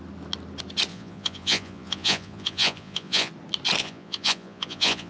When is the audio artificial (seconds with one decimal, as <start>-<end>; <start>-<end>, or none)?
0.9-3.3; 3.8-5.1